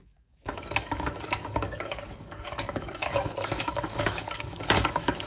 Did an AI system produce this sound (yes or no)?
yes